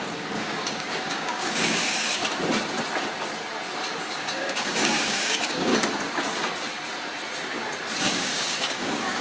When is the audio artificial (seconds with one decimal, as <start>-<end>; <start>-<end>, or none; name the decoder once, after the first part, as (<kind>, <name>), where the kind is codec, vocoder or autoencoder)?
0.0-2.2 (codec, DAC); 4.0-5.7; 8.0-9.2